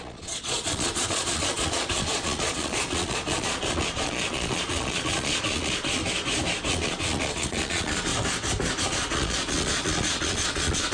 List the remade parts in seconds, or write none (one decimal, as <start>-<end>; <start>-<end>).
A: 0.0-6.0; 6.7-8.1; 8.8-10.9